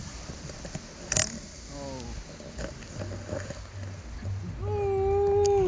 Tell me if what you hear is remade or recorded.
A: recorded